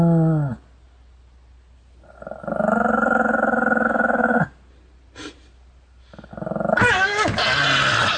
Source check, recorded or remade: recorded